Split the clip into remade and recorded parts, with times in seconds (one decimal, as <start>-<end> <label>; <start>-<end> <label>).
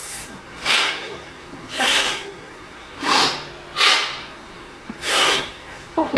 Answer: 0.0-3.2 remade; 3.2-4.2 recorded; 4.2-6.2 remade